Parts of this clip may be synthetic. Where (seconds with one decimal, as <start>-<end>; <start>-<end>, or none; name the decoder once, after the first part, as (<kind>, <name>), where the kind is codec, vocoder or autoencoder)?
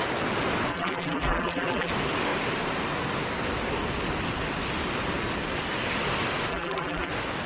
0.7-1.9 (vocoder, BigVGAN v2); 6.5-7.1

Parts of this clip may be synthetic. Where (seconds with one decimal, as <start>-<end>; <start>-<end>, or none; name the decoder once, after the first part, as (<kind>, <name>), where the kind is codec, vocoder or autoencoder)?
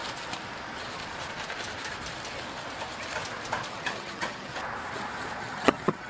3.7-4.5 (vocoder, HiFi-GAN); 5.4-6.1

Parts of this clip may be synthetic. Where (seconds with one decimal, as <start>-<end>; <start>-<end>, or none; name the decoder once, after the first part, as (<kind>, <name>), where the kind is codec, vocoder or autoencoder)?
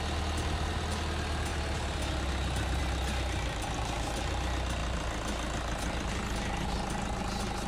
none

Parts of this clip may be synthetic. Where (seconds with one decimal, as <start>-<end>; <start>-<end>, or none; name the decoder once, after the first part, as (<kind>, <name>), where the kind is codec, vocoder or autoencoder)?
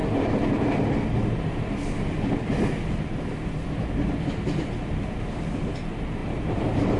none